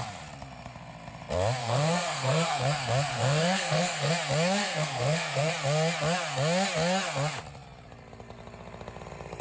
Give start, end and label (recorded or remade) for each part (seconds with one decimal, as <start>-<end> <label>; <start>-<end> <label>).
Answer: 0.0-1.6 recorded; 1.6-2.6 remade; 2.6-3.1 recorded; 3.1-4.1 remade; 4.1-4.6 recorded; 4.6-5.5 remade; 5.5-9.4 recorded